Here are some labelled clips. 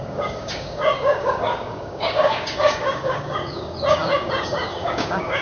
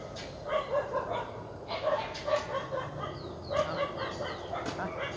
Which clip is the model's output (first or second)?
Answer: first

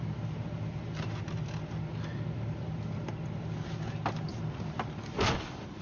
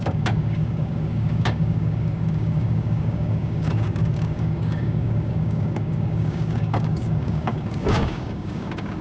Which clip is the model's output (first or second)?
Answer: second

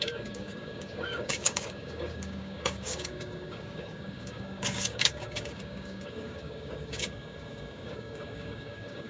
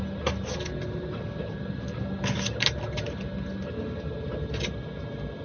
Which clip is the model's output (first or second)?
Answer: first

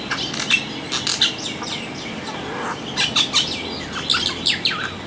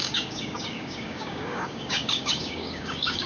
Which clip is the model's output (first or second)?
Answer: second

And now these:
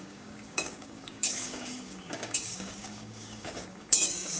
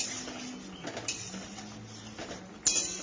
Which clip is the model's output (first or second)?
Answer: first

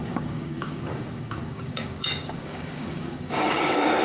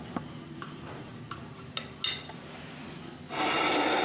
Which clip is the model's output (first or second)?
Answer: first